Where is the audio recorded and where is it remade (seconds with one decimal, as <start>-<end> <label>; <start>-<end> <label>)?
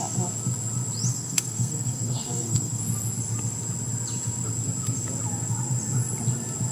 0.0-1.1 recorded; 1.1-2.8 remade; 2.8-6.7 recorded